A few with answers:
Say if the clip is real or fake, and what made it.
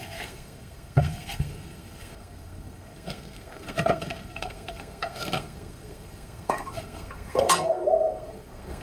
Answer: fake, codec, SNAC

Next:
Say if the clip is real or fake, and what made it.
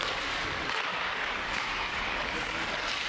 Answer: fake, codec, DAC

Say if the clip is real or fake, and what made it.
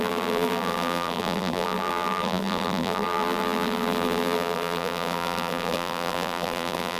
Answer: fake, vocoder, BigVGAN v2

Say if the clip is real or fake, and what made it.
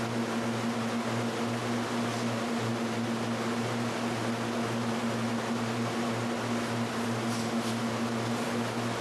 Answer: real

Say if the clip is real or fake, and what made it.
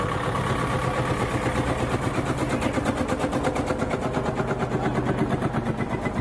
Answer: real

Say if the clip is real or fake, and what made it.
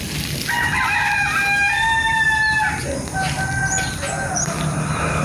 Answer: real